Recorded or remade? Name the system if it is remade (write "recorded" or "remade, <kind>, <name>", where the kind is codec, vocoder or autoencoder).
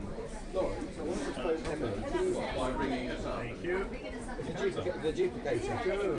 remade, vocoder, BigVGAN v2